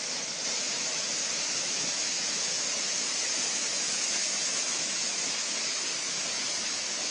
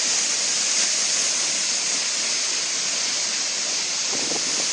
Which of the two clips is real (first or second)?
second